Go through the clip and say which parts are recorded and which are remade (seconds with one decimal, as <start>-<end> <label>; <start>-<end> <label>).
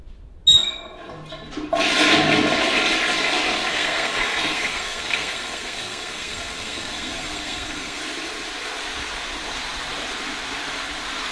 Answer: 0.0-3.7 recorded; 3.7-8.0 remade; 8.0-11.3 recorded